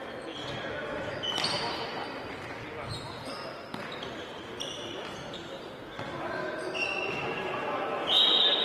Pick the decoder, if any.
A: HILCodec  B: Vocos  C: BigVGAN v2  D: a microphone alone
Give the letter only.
D